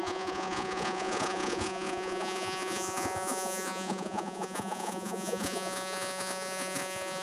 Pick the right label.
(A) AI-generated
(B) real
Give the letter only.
A